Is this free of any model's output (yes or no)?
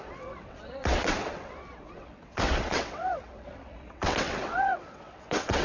no